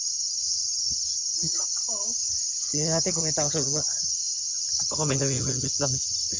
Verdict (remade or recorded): remade